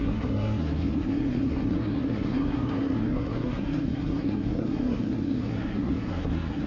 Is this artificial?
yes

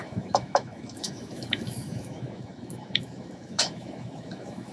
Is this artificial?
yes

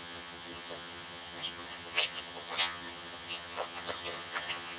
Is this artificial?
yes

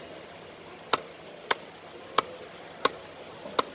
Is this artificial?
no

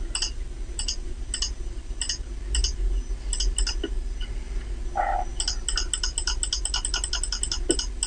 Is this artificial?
no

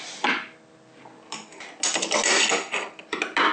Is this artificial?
no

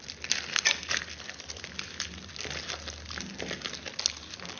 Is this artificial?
no